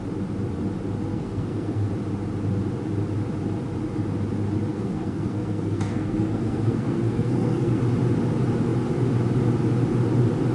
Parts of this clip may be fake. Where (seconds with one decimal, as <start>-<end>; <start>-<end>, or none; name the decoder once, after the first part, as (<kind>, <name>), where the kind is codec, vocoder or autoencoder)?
1.1-1.9 (codec, SNAC); 4.7-7.8